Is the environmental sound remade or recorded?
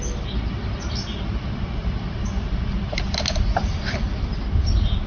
recorded